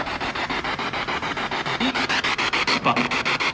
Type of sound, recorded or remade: recorded